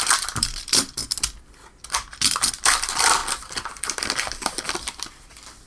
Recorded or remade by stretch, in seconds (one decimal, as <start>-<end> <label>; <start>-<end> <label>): 0.0-1.0 remade; 1.0-2.5 recorded; 2.5-3.2 remade; 3.2-3.7 recorded; 3.7-5.7 remade